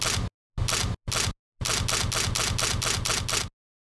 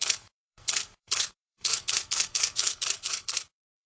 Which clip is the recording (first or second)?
first